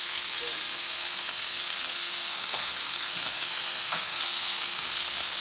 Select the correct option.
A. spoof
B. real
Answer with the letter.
A